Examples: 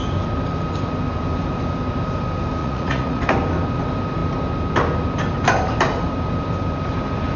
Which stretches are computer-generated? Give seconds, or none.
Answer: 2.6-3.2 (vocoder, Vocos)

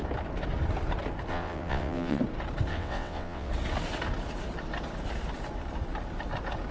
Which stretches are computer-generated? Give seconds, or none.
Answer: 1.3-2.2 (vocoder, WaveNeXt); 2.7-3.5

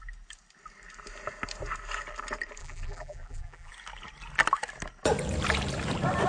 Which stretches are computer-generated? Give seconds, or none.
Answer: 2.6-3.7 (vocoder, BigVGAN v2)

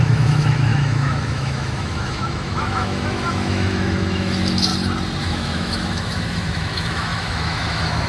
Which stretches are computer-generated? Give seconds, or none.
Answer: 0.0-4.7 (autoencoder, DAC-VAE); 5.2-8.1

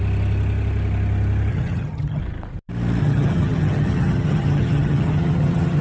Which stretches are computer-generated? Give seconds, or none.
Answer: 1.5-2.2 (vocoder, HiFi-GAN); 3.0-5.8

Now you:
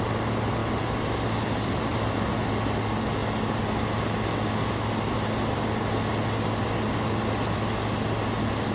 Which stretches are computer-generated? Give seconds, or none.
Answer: none